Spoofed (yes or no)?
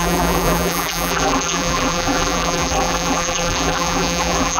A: yes